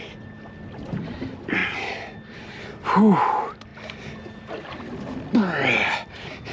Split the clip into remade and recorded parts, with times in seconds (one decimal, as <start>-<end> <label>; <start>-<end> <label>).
0.0-6.5 recorded